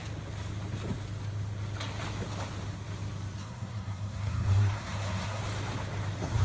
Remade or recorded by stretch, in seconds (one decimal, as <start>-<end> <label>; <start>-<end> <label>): 0.0-3.4 recorded; 3.4-5.4 remade; 5.4-6.4 recorded